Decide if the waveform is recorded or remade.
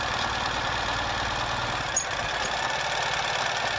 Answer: recorded